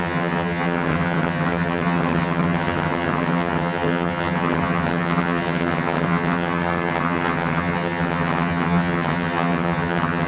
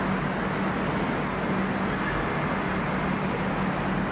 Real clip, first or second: second